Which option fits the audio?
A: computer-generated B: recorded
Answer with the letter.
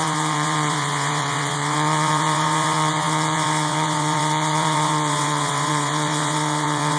A